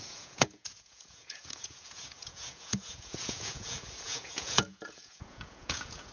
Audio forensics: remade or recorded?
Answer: remade